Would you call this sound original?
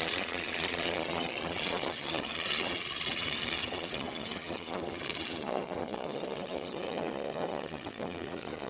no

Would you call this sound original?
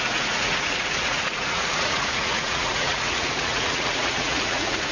no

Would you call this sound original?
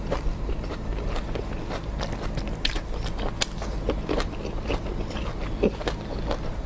yes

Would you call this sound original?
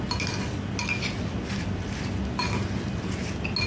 yes